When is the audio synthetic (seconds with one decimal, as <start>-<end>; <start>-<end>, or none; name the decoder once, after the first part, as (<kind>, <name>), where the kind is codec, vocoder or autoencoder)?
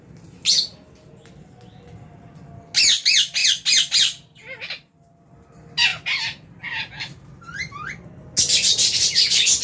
none